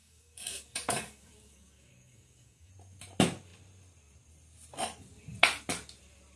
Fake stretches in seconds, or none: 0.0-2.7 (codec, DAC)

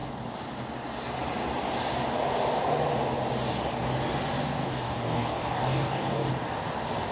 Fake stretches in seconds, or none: 4.6-6.3 (codec, DAC)

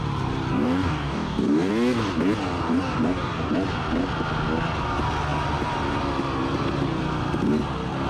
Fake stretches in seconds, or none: 0.5-1.7 (codec, DAC); 2.6-3.5

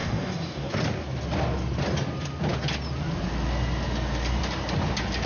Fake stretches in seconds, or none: 0.0-0.7 (codec, DAC)